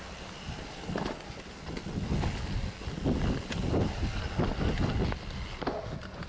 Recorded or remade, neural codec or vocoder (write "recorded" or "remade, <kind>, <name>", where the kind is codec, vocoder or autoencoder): recorded